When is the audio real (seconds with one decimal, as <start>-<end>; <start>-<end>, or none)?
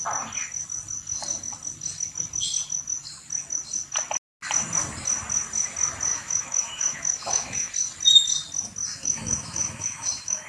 0.0-6.1; 7.7-8.9